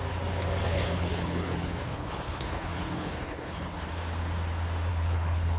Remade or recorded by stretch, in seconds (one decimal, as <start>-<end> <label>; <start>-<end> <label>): 0.0-0.6 recorded; 0.6-3.9 remade; 3.9-4.9 recorded; 4.9-5.6 remade